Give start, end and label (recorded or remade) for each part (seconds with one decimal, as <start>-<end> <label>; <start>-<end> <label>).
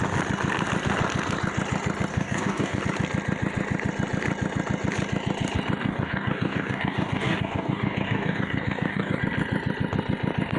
0.0-2.1 recorded; 2.1-2.8 remade; 2.8-5.8 recorded; 5.8-9.2 remade; 9.2-10.6 recorded